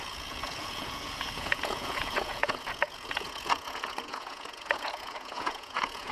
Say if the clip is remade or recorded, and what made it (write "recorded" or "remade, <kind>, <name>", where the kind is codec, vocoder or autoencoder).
remade, vocoder, Vocos